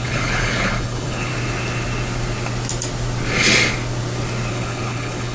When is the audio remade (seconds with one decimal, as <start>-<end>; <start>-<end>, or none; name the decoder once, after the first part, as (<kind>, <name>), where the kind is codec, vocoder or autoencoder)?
0.0-1.3 (codec, HILCodec); 4.5-5.3